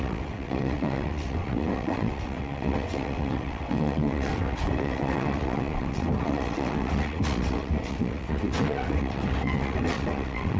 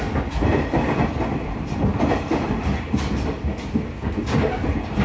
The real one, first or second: second